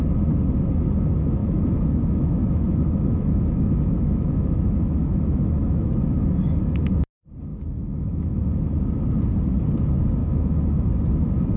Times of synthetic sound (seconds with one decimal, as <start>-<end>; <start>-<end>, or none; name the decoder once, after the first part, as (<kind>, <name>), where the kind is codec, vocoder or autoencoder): 1.4-4.6 (autoencoder, DAC-VAE); 5.0-7.1; 7.5-8.5; 10.2-10.9